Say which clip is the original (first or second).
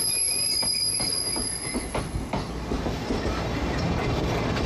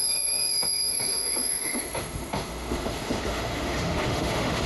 first